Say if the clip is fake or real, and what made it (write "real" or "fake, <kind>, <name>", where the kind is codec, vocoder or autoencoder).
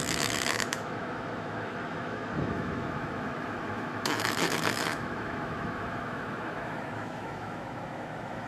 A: fake, autoencoder, DAC-VAE